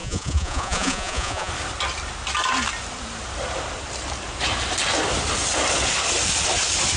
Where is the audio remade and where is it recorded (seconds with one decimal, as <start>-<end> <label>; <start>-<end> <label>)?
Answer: 0.0-1.5 remade; 1.5-7.0 recorded